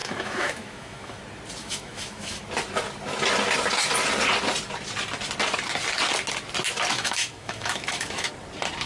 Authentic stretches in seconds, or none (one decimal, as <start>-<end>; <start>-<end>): 1.2-1.6; 2.4-6.9; 8.3-8.9